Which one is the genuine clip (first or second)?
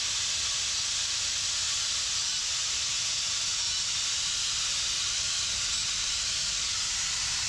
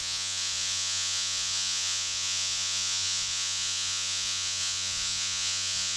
first